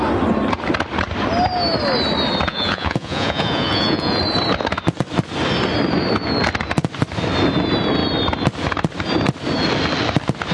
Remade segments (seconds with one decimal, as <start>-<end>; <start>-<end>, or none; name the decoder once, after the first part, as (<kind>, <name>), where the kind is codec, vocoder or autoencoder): 2.5-4.2 (vocoder, Vocos)